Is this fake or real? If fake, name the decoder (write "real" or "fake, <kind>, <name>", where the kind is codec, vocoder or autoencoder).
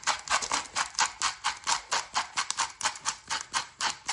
real